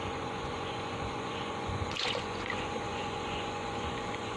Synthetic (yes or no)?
yes